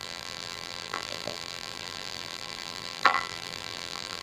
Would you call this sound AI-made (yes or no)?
yes